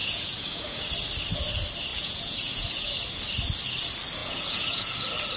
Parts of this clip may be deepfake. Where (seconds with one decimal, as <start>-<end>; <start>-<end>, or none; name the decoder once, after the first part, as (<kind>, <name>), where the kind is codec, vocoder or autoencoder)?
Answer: 0.0-0.8 (vocoder, Vocos); 1.9-2.9; 4.2-4.9